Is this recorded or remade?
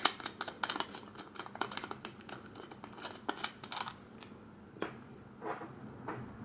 recorded